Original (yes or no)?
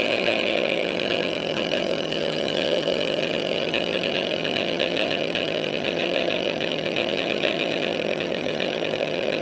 no